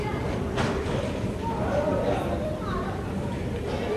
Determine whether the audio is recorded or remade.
recorded